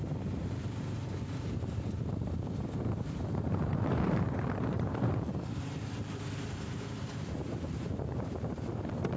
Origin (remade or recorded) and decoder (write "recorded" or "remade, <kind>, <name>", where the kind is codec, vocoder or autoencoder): remade, vocoder, BigVGAN v2